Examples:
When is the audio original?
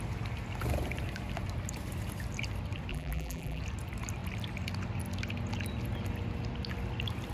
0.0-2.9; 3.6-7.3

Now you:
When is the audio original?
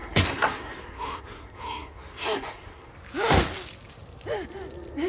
2.9-5.1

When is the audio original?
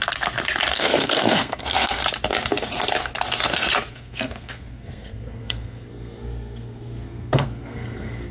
0.0-0.7; 2.0-3.9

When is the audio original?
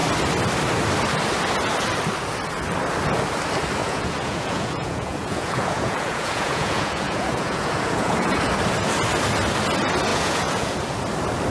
0.0-3.8; 8.5-10.1; 10.8-11.5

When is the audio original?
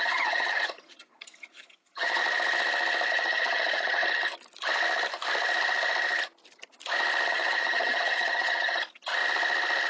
2.2-3.1; 4.0-7.3; 9.1-9.9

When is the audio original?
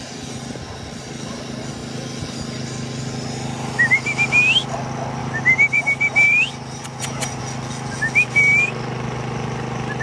0.0-5.2; 7.4-10.0